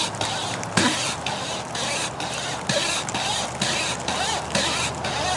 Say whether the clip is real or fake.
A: real